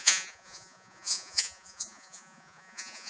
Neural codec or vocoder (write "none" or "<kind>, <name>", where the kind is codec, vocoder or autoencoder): vocoder, Vocos